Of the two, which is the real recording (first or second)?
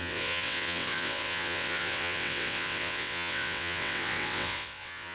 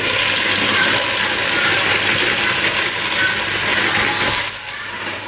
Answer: second